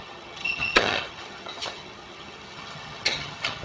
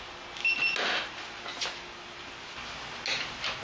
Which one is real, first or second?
second